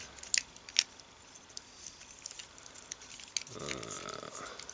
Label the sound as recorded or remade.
recorded